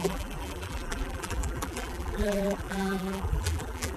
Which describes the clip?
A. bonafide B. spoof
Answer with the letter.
B